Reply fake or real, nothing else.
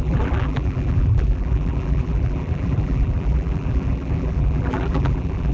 fake